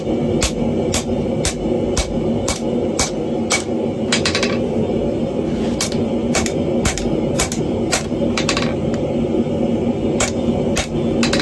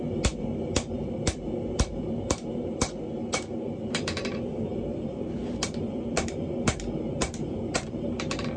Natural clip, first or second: first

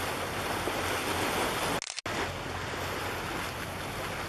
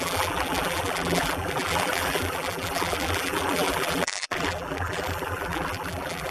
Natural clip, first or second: first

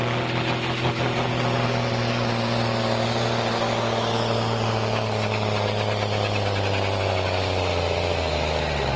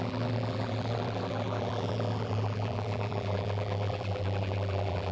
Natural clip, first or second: first